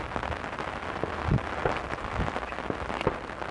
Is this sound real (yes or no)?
yes